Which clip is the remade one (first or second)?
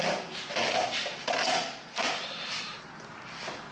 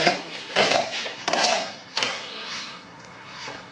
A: second